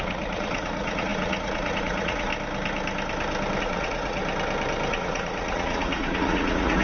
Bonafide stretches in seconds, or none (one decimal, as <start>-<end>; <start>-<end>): 2.3-3.6; 4.2-4.9